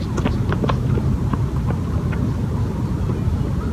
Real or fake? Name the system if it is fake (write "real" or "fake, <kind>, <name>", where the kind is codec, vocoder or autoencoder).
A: real